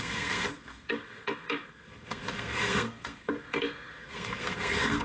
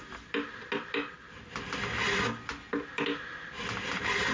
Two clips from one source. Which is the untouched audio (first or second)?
second